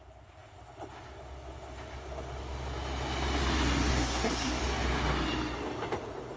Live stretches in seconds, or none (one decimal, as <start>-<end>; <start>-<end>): 0.0-3.9; 4.6-6.4